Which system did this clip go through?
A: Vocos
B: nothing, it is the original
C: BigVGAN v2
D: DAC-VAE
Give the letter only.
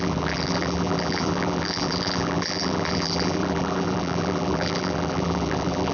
C